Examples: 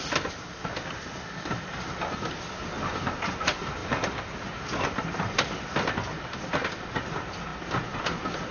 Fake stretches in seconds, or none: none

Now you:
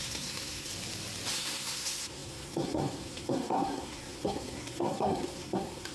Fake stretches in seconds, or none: 0.0-0.7 (codec, SNAC); 1.3-5.9

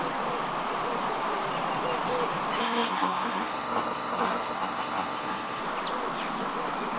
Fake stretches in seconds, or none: 2.6-5.6 (codec, SNAC)

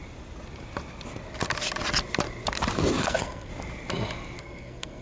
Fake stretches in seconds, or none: 3.0-3.5 (codec, SNAC); 4.4-5.0

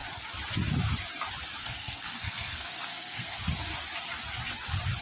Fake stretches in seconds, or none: 1.6-3.4 (codec, SNAC)

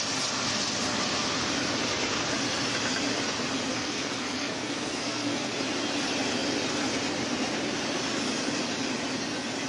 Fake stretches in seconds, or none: 3.7-5.5 (codec, SNAC)

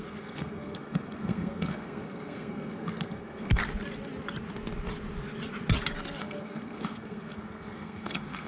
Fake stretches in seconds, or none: 0.0-3.6 (codec, SNAC); 6.2-8.5

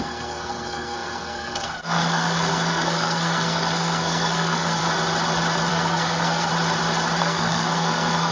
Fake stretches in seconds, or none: 0.0-4.8 (codec, SNAC); 5.7-6.5; 7.2-8.3